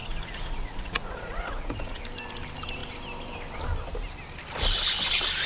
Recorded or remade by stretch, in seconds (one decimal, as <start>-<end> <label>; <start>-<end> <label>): 0.0-2.0 remade; 2.0-5.5 recorded